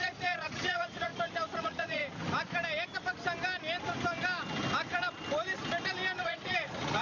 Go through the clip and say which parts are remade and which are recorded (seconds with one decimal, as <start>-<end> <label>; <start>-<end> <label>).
0.0-1.1 remade; 1.1-1.6 recorded; 1.6-2.0 remade; 2.0-6.2 recorded; 6.2-7.0 remade